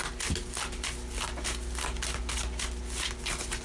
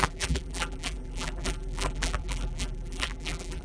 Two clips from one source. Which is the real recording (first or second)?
first